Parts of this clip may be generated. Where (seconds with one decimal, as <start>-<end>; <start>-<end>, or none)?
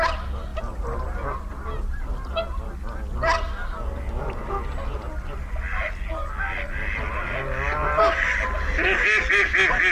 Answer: none